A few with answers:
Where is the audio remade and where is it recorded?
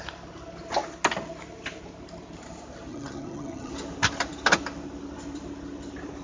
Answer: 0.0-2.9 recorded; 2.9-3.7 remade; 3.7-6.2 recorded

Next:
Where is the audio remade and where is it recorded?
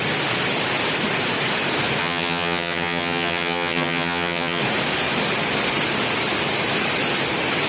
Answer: 0.0-2.0 recorded; 2.0-4.6 remade; 4.6-7.7 recorded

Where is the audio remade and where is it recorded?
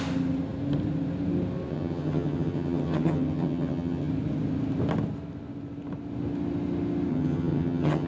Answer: 0.0-1.7 recorded; 1.7-4.1 remade; 4.1-7.1 recorded; 7.1-8.1 remade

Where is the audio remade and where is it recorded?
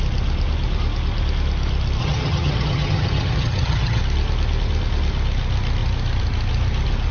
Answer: 0.0-2.0 recorded; 2.0-4.0 remade; 4.0-7.1 recorded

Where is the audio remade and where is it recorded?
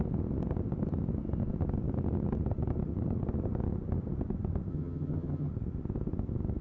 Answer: 0.0-4.7 recorded; 4.7-5.5 remade; 5.5-6.6 recorded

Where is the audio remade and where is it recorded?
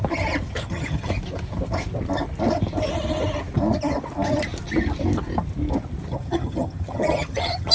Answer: 0.0-0.6 recorded; 0.6-1.1 remade; 1.1-6.1 recorded; 6.1-7.7 remade